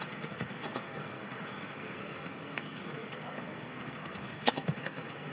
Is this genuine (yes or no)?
no